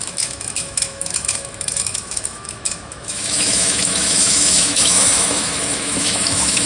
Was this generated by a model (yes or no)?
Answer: yes